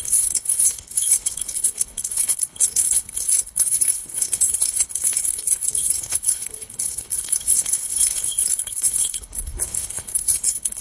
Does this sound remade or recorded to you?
remade